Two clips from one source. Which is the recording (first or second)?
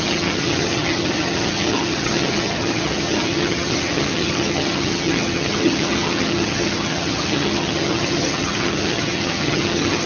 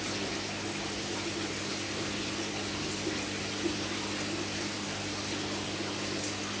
second